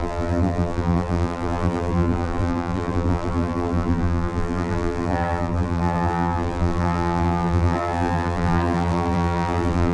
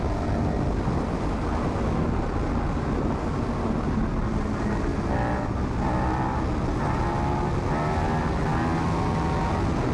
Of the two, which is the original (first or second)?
second